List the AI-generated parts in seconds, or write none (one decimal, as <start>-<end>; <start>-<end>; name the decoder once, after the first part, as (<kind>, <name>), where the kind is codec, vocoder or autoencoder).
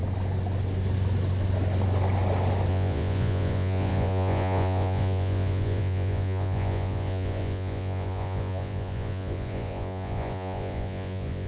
2.7-11.5 (vocoder, Vocos)